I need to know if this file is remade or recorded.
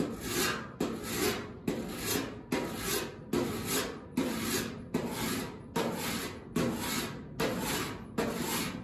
recorded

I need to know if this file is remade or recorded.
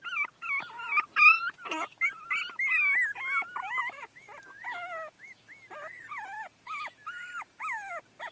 recorded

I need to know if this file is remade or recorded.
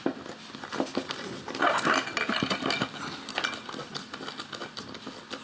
recorded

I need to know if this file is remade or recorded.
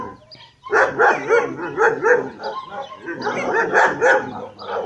recorded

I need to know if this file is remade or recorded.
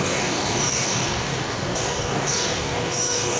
remade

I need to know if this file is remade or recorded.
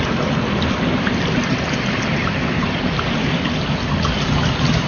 recorded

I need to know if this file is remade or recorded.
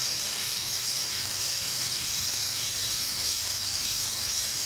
remade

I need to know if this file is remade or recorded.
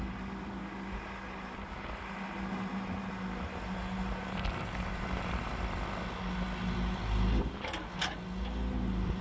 recorded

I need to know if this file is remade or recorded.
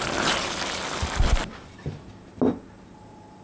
recorded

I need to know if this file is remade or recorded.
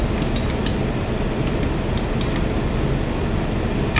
recorded